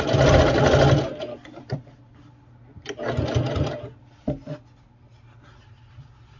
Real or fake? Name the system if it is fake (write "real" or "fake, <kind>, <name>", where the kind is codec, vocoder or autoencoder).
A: real